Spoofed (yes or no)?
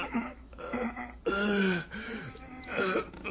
yes